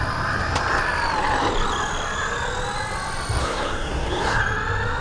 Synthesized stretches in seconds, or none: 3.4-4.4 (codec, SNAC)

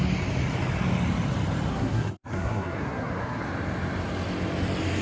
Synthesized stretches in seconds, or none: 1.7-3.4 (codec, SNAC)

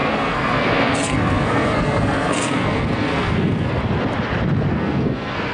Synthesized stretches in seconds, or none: 0.0-3.8 (codec, SNAC); 4.7-5.5